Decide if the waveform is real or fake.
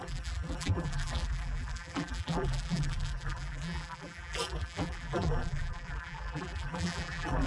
fake